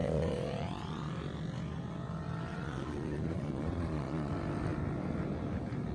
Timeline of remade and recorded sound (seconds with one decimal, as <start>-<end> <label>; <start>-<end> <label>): 0.0-1.1 remade; 1.1-2.5 recorded; 2.5-4.3 remade; 4.3-5.9 recorded